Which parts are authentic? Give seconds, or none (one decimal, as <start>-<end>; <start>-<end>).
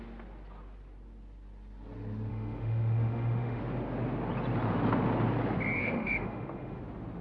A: 0.0-2.3; 3.6-5.8; 6.8-7.2